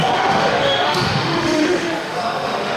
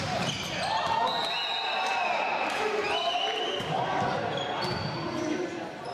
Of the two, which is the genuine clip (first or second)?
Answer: second